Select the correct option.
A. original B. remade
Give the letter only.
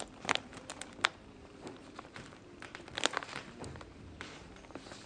B